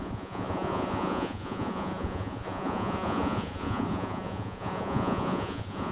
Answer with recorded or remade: remade